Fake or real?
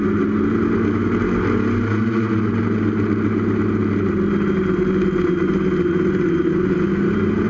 real